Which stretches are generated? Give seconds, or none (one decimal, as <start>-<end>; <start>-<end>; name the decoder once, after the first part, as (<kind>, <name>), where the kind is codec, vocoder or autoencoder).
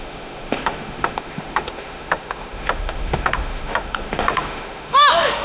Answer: 0.0-5.4 (autoencoder, DAC-VAE)